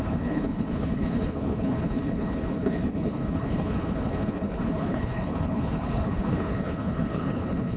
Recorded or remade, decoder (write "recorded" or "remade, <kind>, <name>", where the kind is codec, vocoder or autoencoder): remade, codec, HILCodec